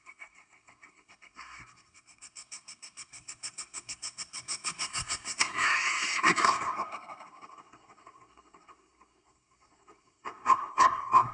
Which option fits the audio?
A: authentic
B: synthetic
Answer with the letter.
B